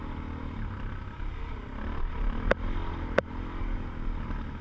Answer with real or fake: real